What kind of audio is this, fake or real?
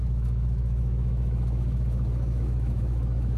fake